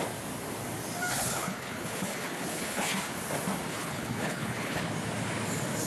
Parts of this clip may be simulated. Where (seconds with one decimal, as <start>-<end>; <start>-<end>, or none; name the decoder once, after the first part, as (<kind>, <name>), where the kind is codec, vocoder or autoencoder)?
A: 1.1-3.1 (codec, HILCodec); 3.7-4.8